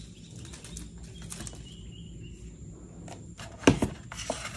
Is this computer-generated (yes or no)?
no